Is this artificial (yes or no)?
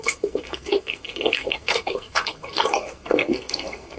yes